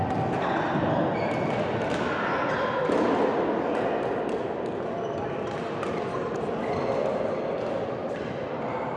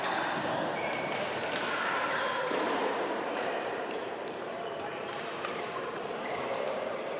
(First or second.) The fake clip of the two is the second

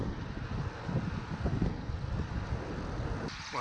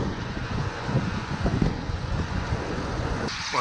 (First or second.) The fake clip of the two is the second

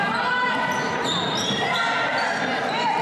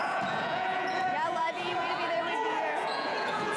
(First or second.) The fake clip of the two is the second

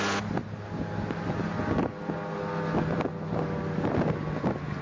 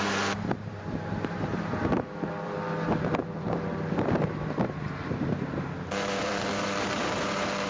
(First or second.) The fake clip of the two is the second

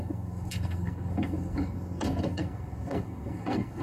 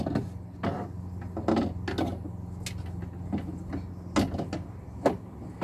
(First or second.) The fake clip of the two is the first